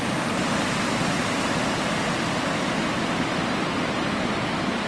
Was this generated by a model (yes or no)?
no